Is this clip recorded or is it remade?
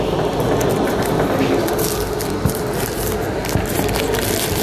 recorded